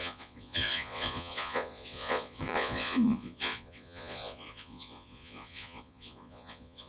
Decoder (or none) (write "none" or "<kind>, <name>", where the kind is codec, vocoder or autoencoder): vocoder, Vocos